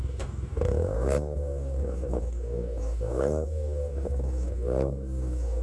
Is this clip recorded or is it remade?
remade